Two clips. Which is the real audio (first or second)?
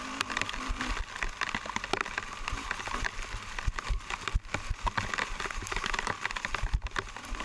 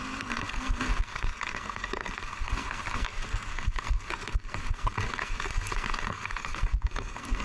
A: first